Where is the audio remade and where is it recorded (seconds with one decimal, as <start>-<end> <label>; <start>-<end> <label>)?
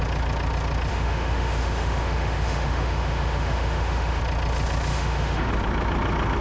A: 0.0-0.9 recorded; 0.9-4.2 remade; 4.2-4.9 recorded; 4.9-5.5 remade; 5.5-6.4 recorded